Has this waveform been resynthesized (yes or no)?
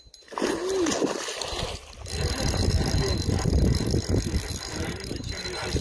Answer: no